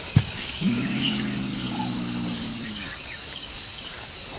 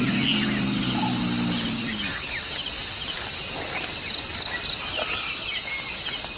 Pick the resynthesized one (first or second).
first